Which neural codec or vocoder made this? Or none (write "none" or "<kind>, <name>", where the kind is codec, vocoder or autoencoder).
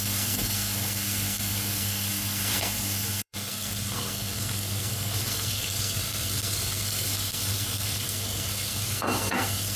codec, SNAC